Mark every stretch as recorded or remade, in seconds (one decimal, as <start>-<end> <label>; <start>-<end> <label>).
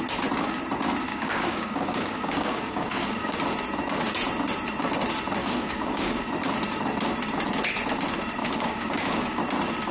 0.0-1.1 recorded; 1.1-3.4 remade; 3.4-5.4 recorded; 5.4-6.3 remade; 6.3-8.4 recorded; 8.4-9.4 remade; 9.4-9.9 recorded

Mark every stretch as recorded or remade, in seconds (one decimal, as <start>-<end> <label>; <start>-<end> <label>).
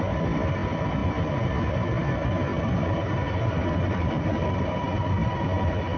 0.0-2.5 recorded; 2.5-4.7 remade; 4.7-6.0 recorded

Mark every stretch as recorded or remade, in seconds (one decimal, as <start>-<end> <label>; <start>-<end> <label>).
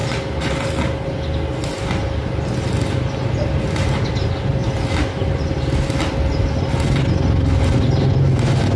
0.0-8.8 recorded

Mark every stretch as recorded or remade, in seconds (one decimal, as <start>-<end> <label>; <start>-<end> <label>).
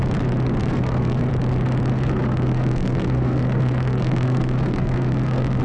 0.0-0.6 recorded; 0.6-1.3 remade; 1.3-1.9 recorded; 1.9-5.6 remade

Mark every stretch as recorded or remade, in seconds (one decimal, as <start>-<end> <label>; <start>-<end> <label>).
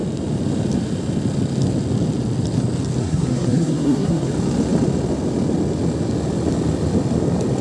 0.0-3.0 recorded; 3.0-4.3 remade; 4.3-7.6 recorded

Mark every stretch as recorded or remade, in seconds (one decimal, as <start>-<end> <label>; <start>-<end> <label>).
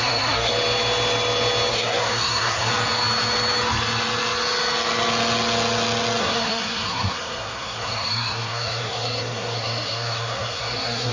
0.0-0.5 remade; 0.5-1.7 recorded; 1.7-2.7 remade; 2.7-6.2 recorded; 6.2-11.1 remade